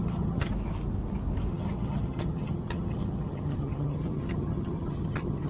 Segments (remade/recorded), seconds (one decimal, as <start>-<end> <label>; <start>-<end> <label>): 0.0-0.5 remade; 0.5-1.5 recorded; 1.5-5.5 remade